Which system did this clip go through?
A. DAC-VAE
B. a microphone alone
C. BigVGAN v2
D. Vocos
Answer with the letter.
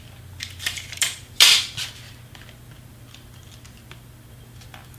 B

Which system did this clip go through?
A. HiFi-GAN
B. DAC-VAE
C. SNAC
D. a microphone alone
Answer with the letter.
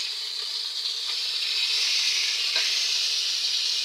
D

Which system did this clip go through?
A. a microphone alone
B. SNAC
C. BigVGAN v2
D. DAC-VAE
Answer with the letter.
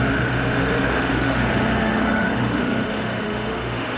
D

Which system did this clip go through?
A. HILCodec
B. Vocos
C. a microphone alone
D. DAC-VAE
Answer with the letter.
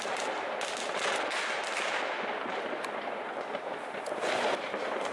C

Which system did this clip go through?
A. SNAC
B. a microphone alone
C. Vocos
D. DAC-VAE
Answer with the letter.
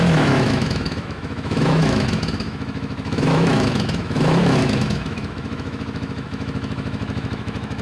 D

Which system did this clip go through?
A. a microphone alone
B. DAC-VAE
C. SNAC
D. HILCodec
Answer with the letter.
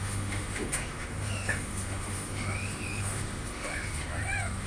B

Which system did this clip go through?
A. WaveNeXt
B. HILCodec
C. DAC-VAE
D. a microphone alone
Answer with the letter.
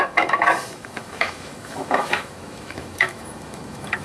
C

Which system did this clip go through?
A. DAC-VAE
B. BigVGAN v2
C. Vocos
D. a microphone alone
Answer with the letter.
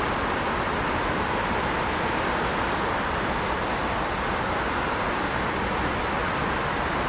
D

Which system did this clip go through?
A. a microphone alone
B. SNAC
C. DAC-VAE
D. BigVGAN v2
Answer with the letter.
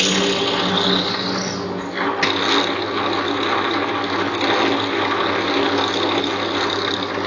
A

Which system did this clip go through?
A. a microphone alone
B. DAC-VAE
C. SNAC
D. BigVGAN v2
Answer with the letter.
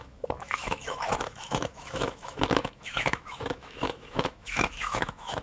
B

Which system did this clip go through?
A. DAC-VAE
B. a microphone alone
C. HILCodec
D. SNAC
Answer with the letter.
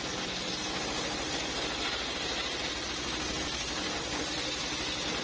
B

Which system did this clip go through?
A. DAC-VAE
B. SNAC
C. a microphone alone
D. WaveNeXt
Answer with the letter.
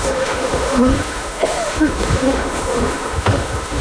A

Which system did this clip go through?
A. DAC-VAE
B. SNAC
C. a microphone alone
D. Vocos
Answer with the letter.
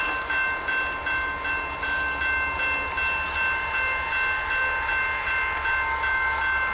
C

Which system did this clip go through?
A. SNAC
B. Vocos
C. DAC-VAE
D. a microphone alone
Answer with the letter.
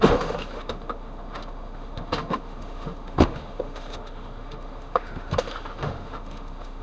C